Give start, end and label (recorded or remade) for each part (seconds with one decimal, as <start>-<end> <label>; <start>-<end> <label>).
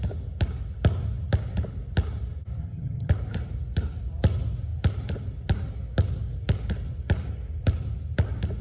0.0-2.6 recorded; 2.6-3.1 remade; 3.1-8.6 recorded